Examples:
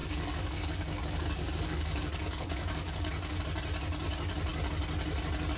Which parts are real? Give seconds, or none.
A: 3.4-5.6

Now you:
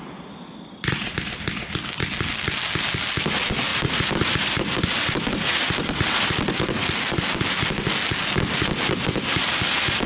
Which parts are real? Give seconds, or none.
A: 0.0-10.1

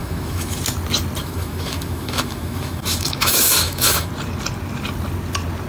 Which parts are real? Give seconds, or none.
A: 0.6-1.2; 4.1-5.7

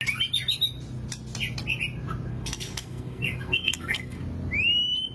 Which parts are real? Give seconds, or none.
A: 0.0-2.3; 4.2-5.1

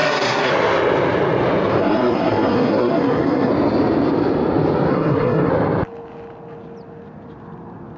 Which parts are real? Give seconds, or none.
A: 0.5-1.8; 3.5-4.9; 5.5-8.0

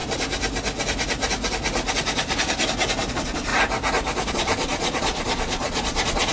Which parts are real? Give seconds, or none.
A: 0.0-3.1; 3.5-4.3

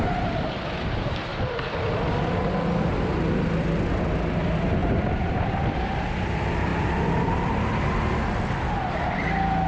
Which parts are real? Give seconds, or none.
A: 0.0-1.3; 2.5-4.8; 5.8-9.7

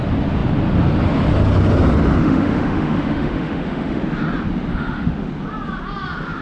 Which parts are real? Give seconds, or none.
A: 0.0-2.2; 4.0-4.7; 5.3-6.4